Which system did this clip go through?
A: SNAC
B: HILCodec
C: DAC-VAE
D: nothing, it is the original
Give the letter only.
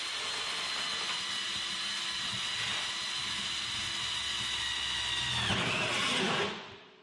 D